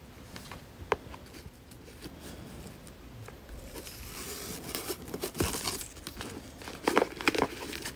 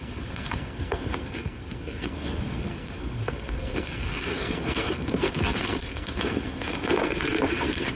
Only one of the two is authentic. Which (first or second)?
first